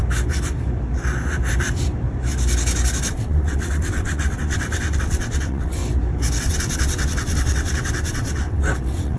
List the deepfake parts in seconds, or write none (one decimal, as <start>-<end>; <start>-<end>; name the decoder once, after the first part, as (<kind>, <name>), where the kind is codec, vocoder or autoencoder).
3.1-5.8 (vocoder, WaveNeXt); 6.4-9.2